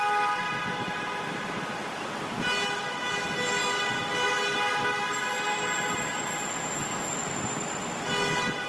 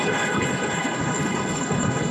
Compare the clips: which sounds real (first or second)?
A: first